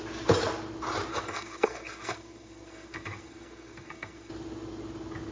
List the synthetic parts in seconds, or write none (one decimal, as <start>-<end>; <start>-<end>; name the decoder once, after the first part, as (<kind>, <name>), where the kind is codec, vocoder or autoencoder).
1.1-4.3 (codec, SNAC)